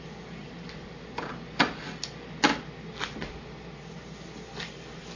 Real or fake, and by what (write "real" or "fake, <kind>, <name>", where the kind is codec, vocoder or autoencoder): real